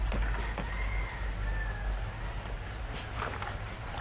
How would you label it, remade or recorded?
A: recorded